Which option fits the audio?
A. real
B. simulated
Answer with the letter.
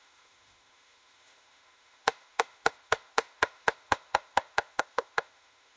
B